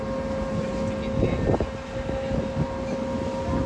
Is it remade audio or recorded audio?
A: recorded